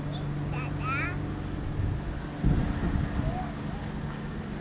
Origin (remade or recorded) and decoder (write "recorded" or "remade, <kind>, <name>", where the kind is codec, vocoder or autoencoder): recorded